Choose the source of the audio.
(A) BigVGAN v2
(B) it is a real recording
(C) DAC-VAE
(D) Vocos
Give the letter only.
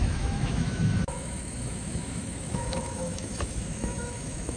C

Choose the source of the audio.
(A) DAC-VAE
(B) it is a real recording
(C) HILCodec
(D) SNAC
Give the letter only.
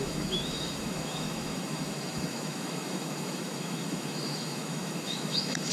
A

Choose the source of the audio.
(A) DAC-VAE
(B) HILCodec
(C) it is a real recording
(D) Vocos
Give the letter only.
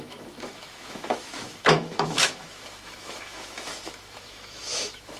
A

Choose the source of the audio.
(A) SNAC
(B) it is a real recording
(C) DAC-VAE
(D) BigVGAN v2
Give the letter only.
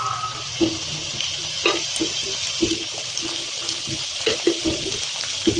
B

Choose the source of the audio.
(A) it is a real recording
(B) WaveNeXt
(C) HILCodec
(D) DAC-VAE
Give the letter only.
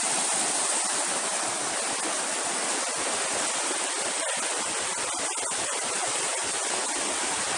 A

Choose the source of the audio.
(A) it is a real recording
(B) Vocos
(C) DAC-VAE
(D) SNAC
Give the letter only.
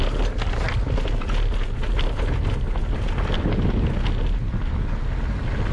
A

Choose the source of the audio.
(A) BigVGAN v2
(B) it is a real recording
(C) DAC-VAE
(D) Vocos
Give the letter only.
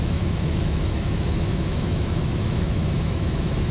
C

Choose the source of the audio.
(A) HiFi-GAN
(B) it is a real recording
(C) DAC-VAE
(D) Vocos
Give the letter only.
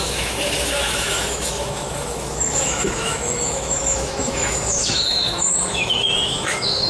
C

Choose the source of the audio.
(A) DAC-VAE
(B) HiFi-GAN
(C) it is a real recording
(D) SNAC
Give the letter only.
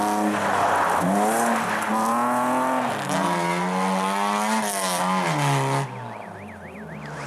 C